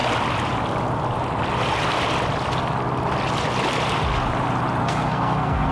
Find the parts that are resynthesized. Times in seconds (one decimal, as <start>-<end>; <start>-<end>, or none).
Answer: 4.8-5.7